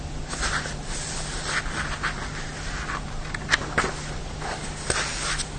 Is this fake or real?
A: real